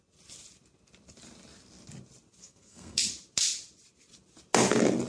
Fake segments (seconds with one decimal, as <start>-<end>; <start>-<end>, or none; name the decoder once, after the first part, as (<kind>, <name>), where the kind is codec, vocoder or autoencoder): 2.4-3.1 (codec, SNAC)